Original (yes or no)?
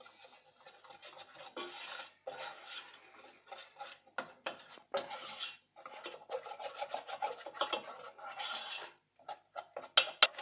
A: yes